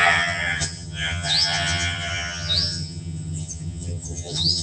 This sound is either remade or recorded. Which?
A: remade